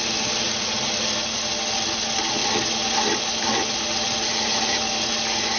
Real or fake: real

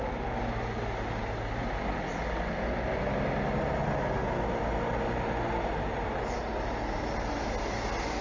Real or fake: real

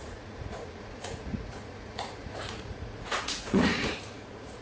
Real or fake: fake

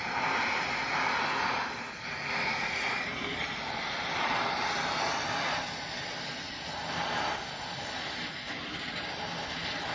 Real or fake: real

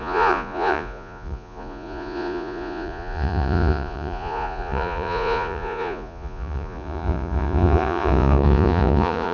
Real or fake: fake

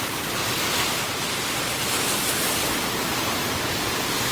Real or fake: real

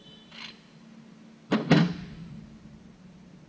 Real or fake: real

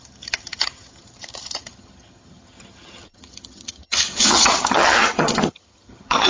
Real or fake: fake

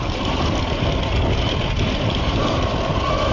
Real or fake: real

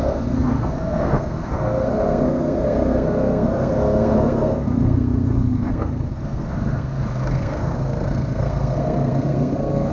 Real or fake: fake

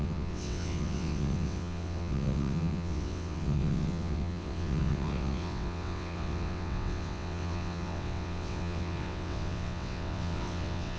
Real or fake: fake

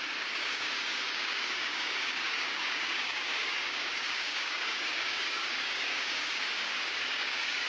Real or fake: fake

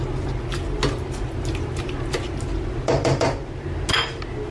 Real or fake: real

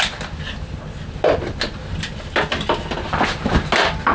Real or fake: real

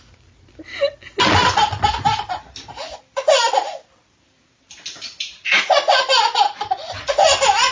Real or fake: real